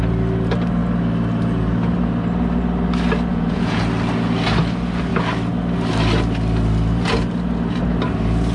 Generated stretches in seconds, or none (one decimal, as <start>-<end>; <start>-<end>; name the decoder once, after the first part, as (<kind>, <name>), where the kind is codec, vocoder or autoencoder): 3.3-3.8 (vocoder, Vocos)